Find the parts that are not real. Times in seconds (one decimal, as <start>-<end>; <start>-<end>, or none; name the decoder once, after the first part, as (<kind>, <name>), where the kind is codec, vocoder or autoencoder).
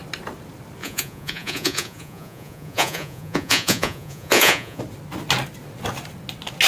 0.8-4.8 (vocoder, Vocos)